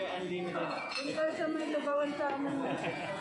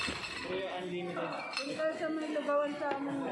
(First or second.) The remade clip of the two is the first